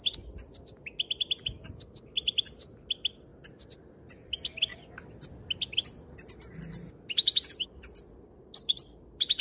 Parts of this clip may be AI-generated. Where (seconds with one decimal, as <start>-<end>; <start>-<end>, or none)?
none